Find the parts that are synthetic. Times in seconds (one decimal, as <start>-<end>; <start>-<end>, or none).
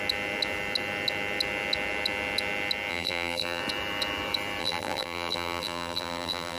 2.9-3.6; 4.6-6.6